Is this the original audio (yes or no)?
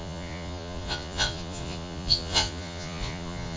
no